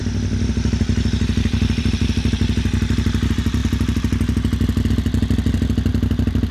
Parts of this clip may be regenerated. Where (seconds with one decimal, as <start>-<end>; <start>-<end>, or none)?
5.9-6.5